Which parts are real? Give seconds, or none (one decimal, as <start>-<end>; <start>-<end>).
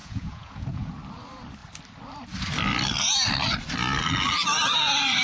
0.9-5.2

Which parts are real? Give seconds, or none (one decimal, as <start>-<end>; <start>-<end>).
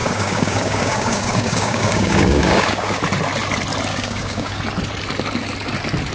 3.0-3.9; 4.6-6.1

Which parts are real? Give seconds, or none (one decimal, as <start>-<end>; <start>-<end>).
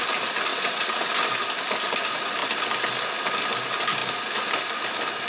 0.0-0.5; 1.1-5.3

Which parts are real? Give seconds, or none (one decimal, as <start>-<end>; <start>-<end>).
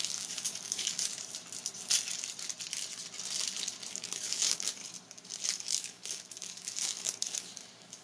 1.1-3.9; 4.8-5.5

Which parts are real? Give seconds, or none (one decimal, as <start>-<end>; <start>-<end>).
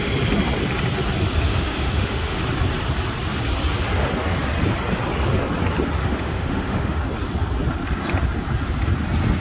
0.0-1.5; 2.4-6.0; 7.0-9.4